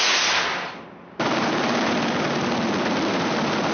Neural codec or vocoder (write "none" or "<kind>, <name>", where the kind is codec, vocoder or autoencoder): vocoder, BigVGAN v2